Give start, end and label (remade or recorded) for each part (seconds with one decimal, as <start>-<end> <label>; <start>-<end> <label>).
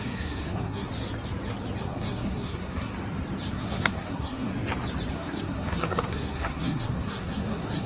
0.0-0.9 remade; 0.9-1.8 recorded; 1.8-2.9 remade; 2.9-3.5 recorded; 3.5-4.5 remade; 4.5-5.1 recorded; 5.1-7.9 remade